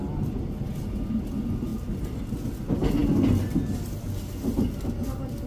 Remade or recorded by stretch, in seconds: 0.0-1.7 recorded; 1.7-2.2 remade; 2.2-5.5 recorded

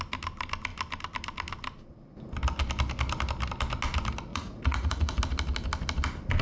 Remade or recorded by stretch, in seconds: 0.0-4.3 recorded; 4.3-5.2 remade; 5.2-6.4 recorded

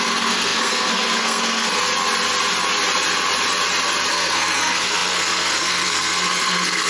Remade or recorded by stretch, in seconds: 0.0-1.8 remade; 1.8-4.1 recorded; 4.1-6.9 remade

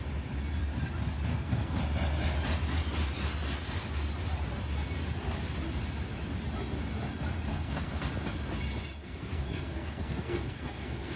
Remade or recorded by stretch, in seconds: 0.0-1.3 recorded; 1.3-1.8 remade; 1.8-7.5 recorded; 7.5-8.1 remade; 8.1-9.0 recorded; 9.0-11.2 remade